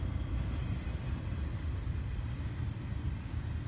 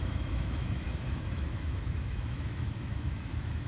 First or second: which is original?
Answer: first